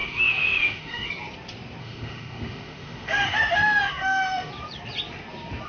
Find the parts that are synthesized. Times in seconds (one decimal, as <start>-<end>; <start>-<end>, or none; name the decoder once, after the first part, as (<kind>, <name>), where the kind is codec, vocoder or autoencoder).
0.0-1.1 (autoencoder, DAC-VAE); 1.8-4.5